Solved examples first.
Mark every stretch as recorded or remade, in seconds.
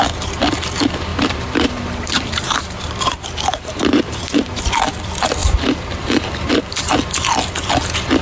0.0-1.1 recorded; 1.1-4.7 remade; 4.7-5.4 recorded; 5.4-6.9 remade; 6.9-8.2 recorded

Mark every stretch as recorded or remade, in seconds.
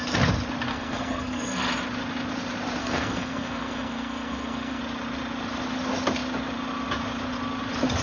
0.0-0.7 recorded; 0.7-1.7 remade; 1.7-2.8 recorded; 2.8-4.8 remade; 4.8-8.0 recorded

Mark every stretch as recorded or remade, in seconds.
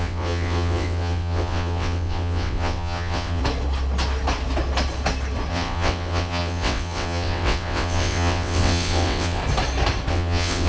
0.0-3.4 remade; 3.4-5.5 recorded; 5.5-9.4 remade; 9.4-10.1 recorded; 10.1-10.7 remade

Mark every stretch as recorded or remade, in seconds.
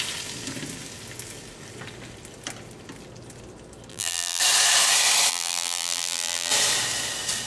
0.0-3.9 recorded; 3.9-4.4 remade; 4.4-5.3 recorded; 5.3-6.5 remade; 6.5-7.5 recorded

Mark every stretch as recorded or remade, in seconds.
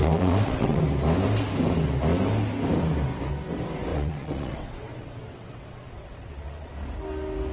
0.0-0.8 remade; 0.8-3.9 recorded; 3.9-6.7 remade; 6.7-7.5 recorded